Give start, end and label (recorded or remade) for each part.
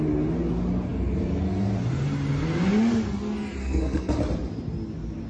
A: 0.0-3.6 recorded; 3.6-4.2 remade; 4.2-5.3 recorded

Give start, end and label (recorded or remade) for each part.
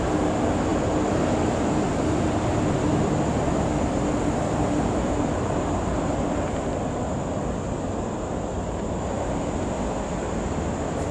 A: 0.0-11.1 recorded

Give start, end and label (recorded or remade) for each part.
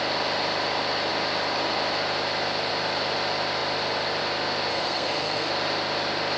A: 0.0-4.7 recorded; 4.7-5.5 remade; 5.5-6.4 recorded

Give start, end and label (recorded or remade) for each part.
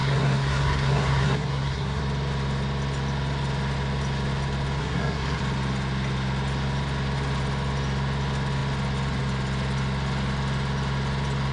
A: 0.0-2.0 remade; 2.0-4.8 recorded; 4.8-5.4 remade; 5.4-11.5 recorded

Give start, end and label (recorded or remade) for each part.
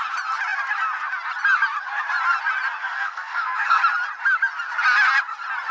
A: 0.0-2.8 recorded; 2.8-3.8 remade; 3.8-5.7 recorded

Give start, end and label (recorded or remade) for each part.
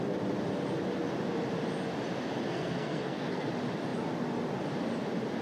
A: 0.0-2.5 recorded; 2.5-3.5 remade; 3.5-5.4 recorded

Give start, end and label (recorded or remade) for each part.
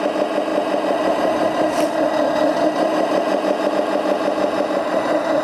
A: 0.0-5.4 recorded